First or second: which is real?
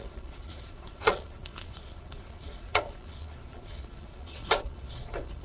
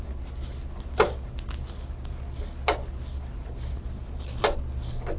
second